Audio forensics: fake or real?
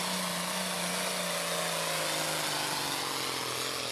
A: real